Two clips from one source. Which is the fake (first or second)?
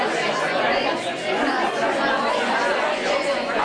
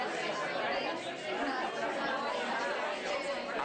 first